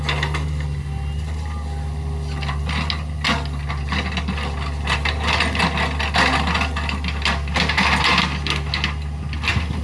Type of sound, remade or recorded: recorded